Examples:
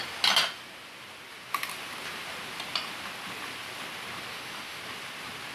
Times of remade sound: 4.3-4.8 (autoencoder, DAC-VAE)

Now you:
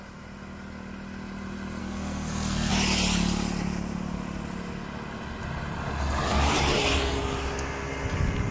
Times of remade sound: 1.8-2.7 (codec, SNAC)